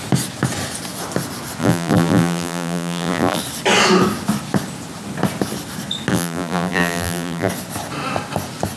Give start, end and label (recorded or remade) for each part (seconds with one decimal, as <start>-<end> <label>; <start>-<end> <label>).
0.0-1.6 recorded; 1.6-3.4 remade; 3.4-6.1 recorded; 6.1-7.5 remade; 7.5-8.8 recorded